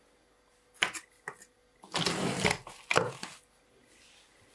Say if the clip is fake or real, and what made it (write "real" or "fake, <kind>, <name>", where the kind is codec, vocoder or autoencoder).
real